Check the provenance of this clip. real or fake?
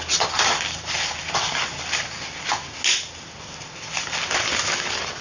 real